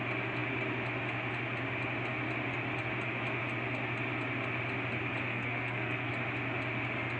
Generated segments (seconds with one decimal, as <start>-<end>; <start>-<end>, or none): 5.3-6.1